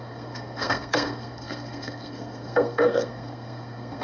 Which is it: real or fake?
fake